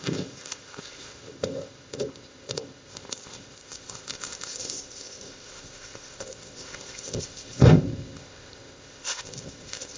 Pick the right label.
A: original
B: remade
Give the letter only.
B